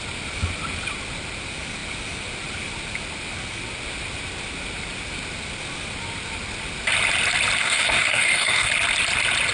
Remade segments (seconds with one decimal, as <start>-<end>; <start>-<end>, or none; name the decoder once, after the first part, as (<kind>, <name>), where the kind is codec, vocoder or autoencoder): 7.6-8.7 (codec, DAC)